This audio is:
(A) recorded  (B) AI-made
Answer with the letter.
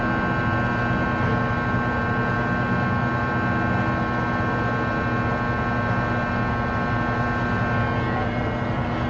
A